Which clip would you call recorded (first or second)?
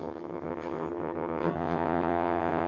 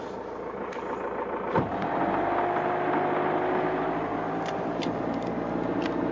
second